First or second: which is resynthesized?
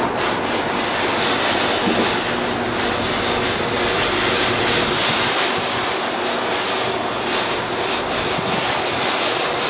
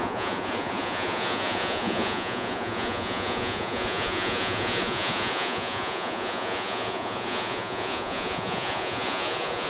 second